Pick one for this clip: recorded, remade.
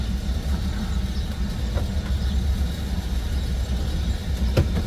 recorded